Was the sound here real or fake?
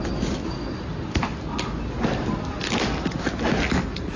real